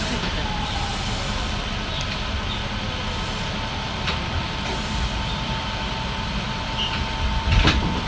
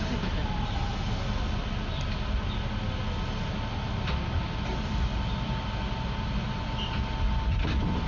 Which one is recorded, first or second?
second